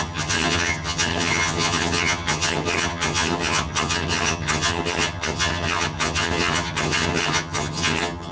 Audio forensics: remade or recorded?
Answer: remade